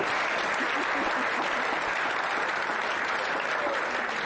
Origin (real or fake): real